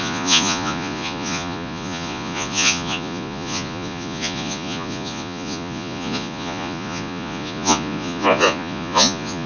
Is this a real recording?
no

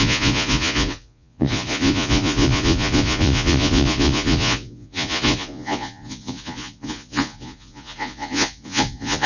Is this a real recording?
no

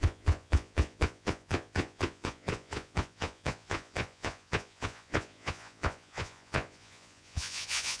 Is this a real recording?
no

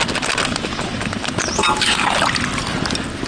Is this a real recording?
yes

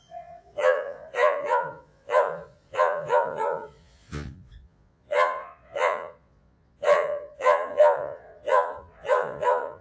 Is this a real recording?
no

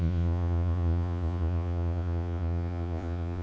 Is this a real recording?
no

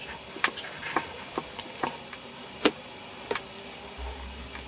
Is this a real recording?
yes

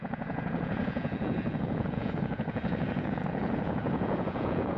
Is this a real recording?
no